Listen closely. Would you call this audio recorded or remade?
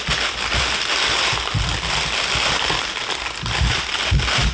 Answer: recorded